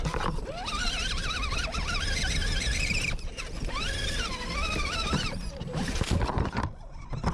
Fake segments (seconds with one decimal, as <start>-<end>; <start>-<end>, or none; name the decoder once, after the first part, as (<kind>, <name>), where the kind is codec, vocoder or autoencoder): 2.4-5.9 (vocoder, BigVGAN v2)